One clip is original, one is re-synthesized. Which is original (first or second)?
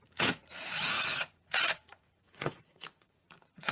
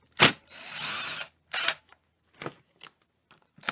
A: second